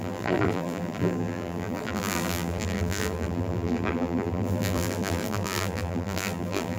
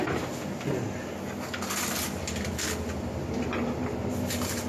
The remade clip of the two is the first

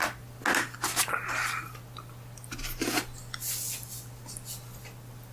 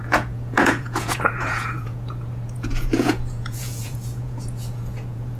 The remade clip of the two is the second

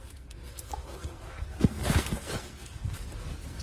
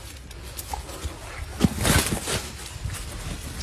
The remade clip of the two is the first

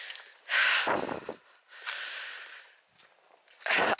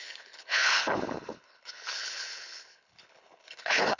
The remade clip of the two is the second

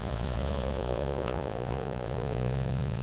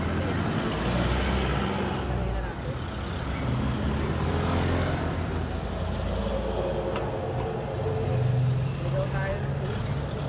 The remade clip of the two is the first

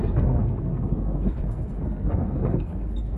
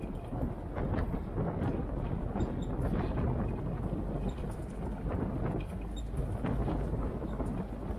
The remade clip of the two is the first